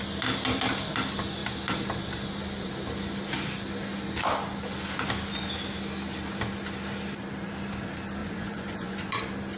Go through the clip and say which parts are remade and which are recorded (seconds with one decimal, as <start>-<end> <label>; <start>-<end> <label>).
0.0-8.2 recorded; 8.2-9.2 remade; 9.2-9.6 recorded